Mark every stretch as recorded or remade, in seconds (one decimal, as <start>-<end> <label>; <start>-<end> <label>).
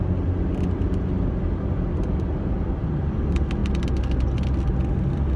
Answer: 0.0-5.4 recorded